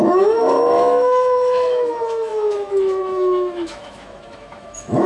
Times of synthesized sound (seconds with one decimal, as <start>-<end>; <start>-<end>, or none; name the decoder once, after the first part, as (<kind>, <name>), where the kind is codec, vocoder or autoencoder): 0.0-5.1 (autoencoder, DAC-VAE)